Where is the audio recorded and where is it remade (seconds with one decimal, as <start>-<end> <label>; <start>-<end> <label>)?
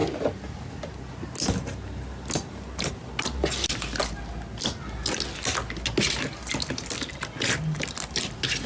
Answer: 0.0-8.7 recorded